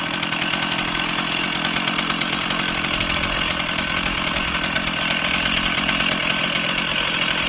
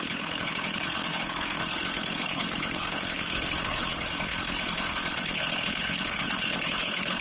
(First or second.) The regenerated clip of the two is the second